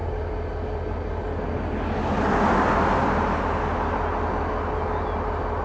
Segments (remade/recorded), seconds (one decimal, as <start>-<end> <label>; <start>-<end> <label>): 0.0-5.6 recorded